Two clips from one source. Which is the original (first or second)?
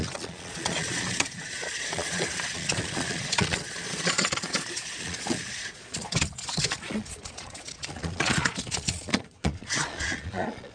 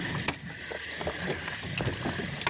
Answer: second